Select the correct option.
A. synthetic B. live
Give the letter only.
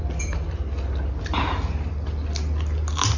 B